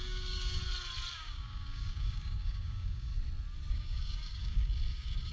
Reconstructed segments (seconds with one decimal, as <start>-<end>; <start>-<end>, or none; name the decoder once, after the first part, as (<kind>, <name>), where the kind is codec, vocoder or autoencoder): 0.0-0.6 (codec, DAC); 1.1-3.1; 3.7-5.3